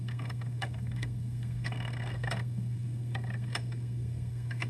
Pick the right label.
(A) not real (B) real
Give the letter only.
A